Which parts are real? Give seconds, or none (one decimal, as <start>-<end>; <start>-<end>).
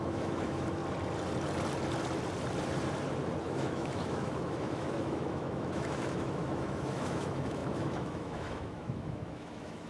0.8-3.4